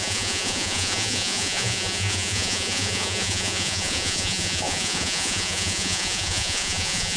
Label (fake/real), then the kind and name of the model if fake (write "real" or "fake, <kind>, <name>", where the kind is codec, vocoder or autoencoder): fake, vocoder, Vocos